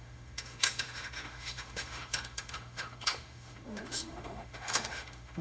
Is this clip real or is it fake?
fake